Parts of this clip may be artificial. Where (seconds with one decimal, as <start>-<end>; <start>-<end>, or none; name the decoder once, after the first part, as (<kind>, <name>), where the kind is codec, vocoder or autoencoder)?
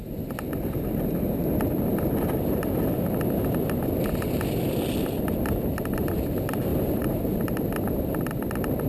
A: 6.7-7.6 (vocoder, BigVGAN v2)